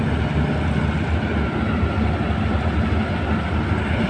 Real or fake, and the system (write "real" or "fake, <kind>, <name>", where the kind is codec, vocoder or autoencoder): real